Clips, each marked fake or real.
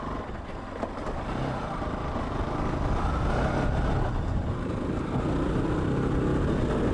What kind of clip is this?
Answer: real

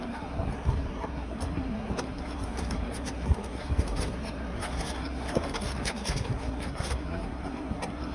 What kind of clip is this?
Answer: fake